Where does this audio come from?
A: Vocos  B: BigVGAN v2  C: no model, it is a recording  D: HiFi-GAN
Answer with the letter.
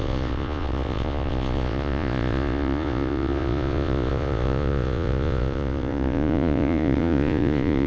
A